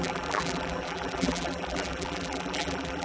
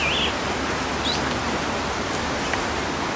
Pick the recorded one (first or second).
second